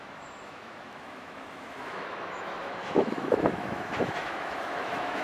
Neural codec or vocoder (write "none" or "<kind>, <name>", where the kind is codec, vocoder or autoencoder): autoencoder, DAC-VAE